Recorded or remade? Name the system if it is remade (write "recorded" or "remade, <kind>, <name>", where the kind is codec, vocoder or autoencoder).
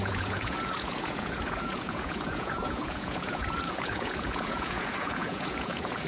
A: remade, vocoder, Vocos